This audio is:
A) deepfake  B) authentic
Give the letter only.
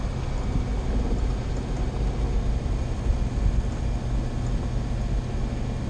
B